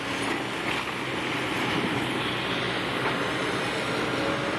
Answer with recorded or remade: recorded